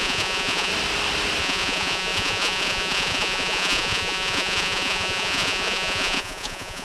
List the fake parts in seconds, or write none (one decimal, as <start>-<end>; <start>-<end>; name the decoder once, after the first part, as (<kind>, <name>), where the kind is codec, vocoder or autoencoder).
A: 0.0-0.7 (vocoder, Vocos); 1.4-6.8